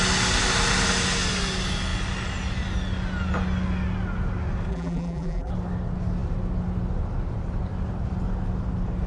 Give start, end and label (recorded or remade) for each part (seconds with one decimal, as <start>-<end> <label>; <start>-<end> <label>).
0.0-4.7 recorded; 4.7-5.5 remade; 5.5-9.1 recorded